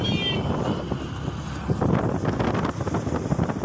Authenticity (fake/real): real